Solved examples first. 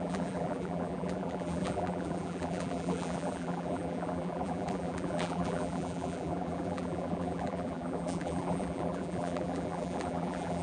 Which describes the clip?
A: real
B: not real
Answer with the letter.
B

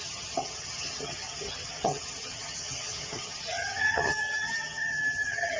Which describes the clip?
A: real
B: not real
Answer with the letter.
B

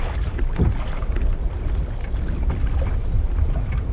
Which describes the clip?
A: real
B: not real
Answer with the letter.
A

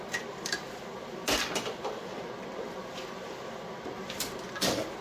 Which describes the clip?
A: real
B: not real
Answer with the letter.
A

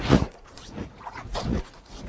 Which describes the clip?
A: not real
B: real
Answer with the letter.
A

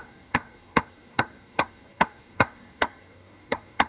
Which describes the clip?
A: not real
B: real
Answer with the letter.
A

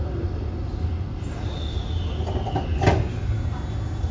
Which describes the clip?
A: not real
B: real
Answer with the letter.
B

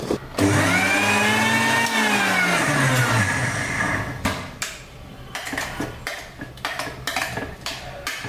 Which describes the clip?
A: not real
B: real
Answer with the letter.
B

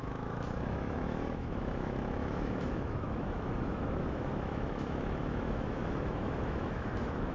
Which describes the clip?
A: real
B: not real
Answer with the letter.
B